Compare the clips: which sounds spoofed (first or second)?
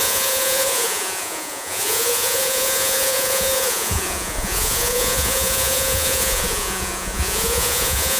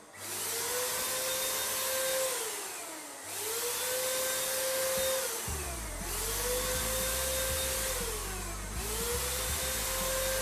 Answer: first